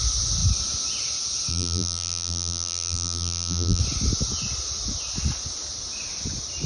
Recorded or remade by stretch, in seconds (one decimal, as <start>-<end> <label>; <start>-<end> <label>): 0.0-1.5 recorded; 1.5-3.8 remade; 3.8-6.7 recorded